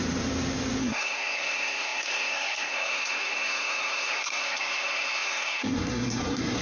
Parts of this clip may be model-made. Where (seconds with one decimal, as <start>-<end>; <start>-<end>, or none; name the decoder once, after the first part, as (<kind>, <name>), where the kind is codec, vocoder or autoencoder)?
0.8-6.6 (codec, SNAC)